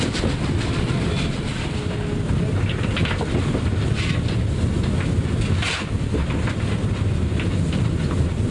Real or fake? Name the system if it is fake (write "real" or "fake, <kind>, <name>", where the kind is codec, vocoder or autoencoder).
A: real